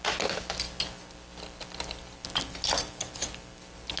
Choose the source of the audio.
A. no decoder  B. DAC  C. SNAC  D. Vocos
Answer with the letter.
A